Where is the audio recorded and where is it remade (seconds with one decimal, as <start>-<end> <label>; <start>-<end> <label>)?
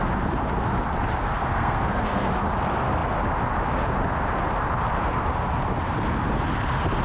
0.0-1.2 recorded; 1.2-2.3 remade; 2.3-7.0 recorded